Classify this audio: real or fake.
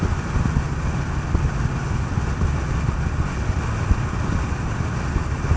real